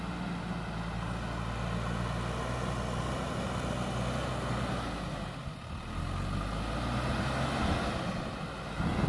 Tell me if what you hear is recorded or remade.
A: recorded